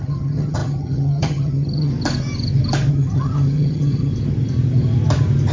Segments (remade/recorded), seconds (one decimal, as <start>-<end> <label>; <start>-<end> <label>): 0.0-1.9 remade; 1.9-2.9 recorded; 2.9-4.1 remade; 4.1-5.5 recorded